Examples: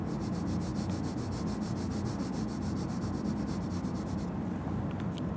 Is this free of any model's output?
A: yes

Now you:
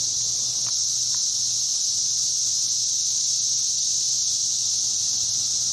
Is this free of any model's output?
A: yes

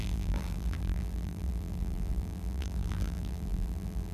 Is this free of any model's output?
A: no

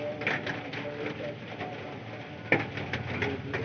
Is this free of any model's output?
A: yes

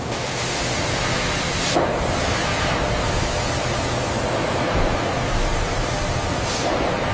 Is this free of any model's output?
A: yes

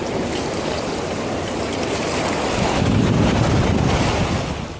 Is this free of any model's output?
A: no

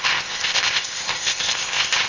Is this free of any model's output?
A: no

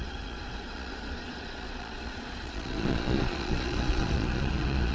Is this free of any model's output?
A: no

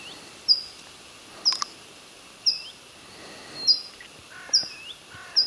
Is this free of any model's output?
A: yes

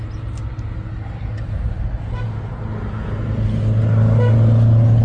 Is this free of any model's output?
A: yes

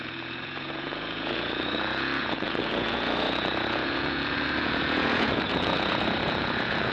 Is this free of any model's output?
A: no